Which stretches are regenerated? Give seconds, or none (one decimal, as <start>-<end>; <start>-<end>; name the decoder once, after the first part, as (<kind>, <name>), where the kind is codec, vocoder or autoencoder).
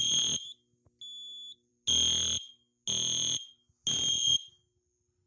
none